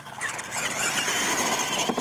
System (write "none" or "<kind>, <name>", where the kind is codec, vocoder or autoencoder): vocoder, BigVGAN v2